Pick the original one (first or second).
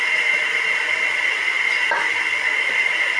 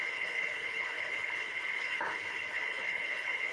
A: first